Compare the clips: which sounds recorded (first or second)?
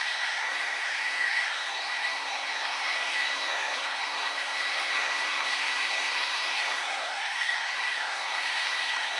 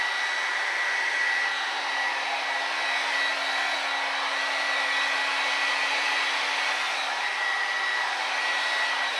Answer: second